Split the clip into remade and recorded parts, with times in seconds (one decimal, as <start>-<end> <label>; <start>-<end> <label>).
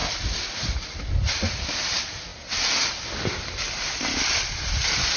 0.0-5.2 recorded